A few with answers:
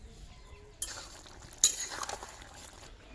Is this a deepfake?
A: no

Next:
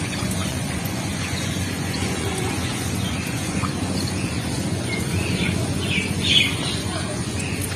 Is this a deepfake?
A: yes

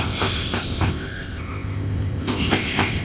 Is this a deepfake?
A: yes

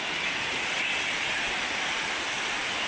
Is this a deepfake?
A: no